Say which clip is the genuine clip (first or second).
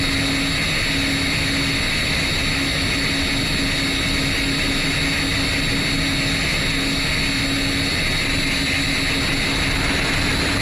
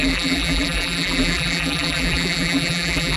first